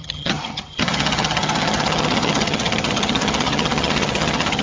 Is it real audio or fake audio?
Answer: fake